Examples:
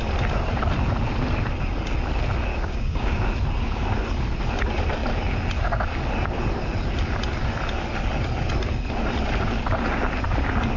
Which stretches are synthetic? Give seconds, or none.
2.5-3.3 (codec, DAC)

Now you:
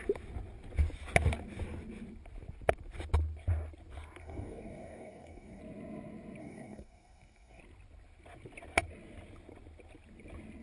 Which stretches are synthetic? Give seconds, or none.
4.2-5.6 (codec, DAC); 6.4-7.6

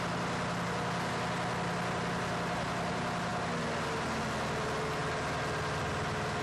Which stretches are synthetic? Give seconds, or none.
none